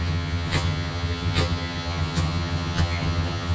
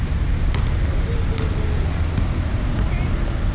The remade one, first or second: first